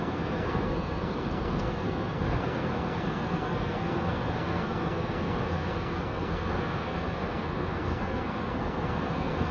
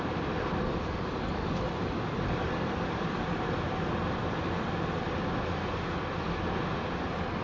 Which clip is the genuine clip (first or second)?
second